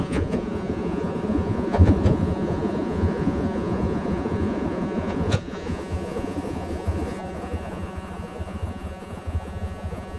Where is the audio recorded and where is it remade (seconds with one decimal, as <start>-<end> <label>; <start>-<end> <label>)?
0.0-10.2 remade